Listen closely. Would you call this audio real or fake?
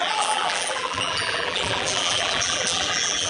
fake